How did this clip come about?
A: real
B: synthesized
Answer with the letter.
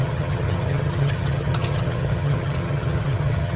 B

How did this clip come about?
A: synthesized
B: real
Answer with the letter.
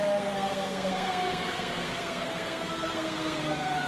A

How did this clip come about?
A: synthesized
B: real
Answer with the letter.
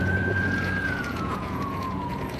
A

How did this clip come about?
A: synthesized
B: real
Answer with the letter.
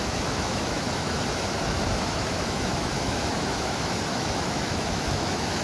A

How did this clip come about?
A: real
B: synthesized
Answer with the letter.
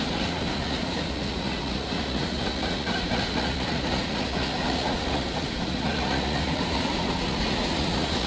B